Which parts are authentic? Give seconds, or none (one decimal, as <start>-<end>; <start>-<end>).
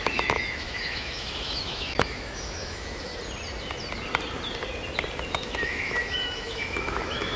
3.1-5.3